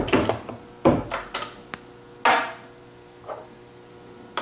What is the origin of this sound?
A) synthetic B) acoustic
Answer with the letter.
B